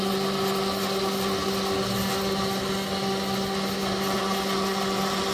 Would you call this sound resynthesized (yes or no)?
no